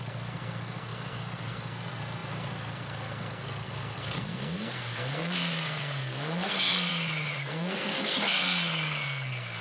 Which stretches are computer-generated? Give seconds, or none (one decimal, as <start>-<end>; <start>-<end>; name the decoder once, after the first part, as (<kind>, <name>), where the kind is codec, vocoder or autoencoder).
0.0-6.9 (codec, SNAC); 7.5-9.6